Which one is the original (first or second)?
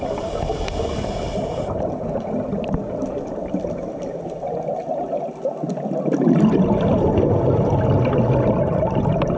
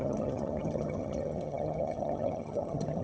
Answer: first